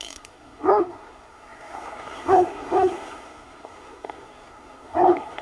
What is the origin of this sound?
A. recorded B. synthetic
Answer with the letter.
B